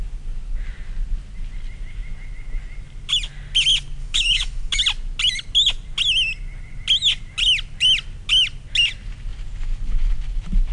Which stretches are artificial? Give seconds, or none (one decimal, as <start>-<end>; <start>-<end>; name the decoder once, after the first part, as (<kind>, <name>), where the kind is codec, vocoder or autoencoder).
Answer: 4.0-4.8 (autoencoder, DAC-VAE)

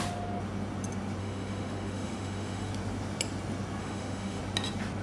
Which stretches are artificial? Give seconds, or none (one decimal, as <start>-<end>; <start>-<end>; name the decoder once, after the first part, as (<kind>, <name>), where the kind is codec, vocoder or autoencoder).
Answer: 1.2-2.7 (autoencoder, DAC-VAE); 3.8-4.4

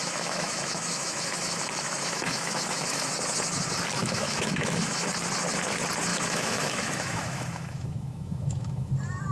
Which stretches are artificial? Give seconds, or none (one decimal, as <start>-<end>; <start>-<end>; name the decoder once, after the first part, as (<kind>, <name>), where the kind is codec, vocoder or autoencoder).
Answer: 0.0-3.1 (autoencoder, DAC-VAE); 4.0-5.1; 6.1-8.9

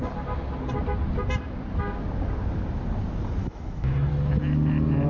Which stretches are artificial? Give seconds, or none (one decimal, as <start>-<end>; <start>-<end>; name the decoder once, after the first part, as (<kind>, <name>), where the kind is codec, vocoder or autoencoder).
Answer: 3.4-4.1 (autoencoder, DAC-VAE)

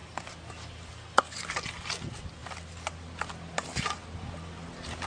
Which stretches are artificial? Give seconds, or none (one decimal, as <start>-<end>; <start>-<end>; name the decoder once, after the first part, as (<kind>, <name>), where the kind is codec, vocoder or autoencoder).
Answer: none